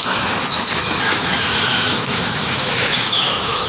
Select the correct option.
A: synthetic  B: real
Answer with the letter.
A